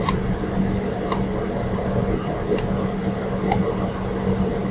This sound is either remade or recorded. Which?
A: recorded